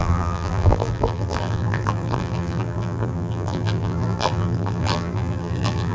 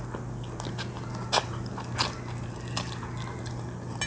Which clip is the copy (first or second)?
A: first